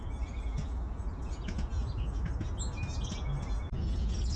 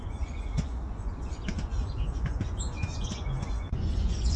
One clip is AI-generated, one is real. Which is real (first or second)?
first